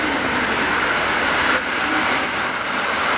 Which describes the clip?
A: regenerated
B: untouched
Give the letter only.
B